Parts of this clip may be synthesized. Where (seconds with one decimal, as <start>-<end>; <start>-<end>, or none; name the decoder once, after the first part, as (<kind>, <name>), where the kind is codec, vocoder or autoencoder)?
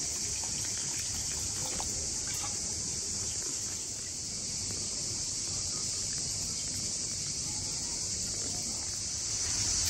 1.6-6.2 (vocoder, BigVGAN v2)